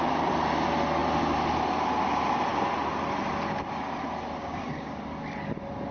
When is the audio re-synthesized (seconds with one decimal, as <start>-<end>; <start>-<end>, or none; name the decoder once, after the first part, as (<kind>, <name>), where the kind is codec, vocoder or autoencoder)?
4.4-5.0 (codec, DAC)